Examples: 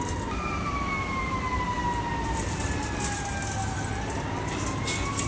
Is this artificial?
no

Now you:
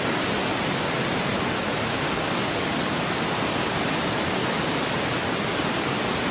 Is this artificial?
no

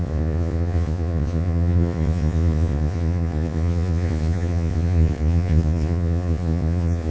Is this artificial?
yes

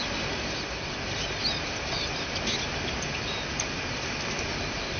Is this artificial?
no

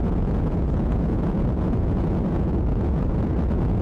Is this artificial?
yes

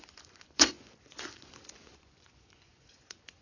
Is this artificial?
yes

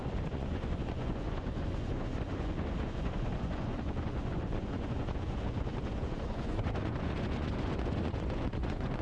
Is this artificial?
yes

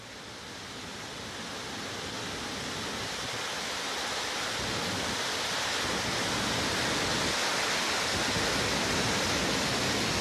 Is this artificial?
no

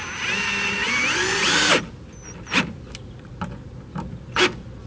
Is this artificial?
no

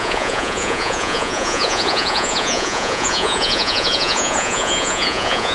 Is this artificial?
yes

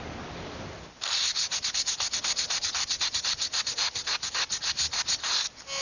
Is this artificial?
no